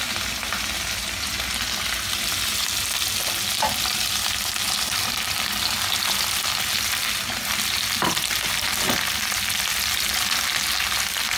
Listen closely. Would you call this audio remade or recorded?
recorded